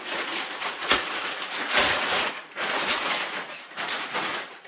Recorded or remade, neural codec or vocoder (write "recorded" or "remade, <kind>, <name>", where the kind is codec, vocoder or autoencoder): remade, vocoder, Vocos